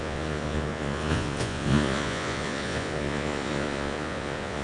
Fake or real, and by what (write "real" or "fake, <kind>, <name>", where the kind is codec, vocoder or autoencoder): fake, vocoder, Vocos